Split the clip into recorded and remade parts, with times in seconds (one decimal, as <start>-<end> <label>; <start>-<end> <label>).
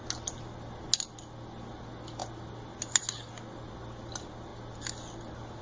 0.0-5.6 recorded